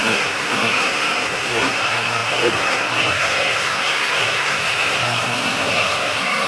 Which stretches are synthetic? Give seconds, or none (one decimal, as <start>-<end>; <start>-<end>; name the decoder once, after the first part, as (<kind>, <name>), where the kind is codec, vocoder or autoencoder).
0.0-6.5 (codec, SNAC)

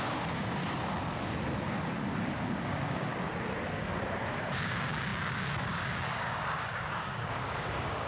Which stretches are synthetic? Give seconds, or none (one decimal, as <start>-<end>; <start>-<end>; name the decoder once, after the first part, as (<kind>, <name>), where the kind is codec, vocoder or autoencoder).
0.0-0.6 (codec, DAC); 2.5-3.1; 4.4-8.1

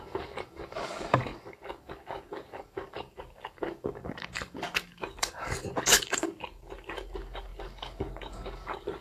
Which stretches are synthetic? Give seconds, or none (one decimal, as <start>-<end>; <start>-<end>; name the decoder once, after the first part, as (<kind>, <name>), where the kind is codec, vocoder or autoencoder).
0.0-9.0 (codec, DAC)

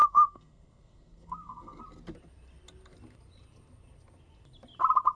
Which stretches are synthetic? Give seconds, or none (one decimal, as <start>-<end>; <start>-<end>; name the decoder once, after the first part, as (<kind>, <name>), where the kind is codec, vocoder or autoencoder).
0.0-1.8 (codec, SNAC)